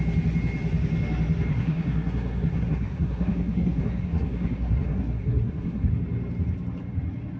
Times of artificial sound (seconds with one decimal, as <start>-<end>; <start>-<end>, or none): 1.5-5.9